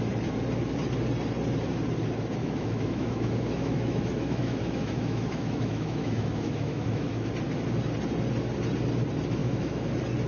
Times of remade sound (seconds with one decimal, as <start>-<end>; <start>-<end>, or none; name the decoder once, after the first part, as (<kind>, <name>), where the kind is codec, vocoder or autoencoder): 2.4-7.3 (autoencoder, DAC-VAE); 9.4-9.9